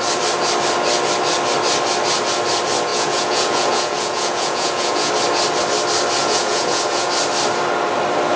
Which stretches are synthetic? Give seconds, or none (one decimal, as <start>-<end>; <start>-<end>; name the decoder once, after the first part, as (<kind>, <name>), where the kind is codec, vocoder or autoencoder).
2.9-5.1 (vocoder, Vocos); 6.2-7.1